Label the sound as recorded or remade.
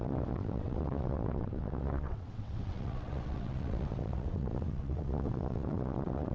remade